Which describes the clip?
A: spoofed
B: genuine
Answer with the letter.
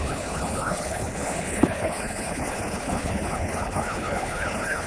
A